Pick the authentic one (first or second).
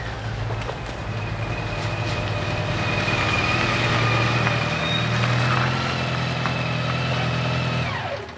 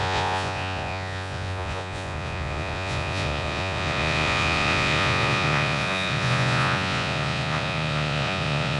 first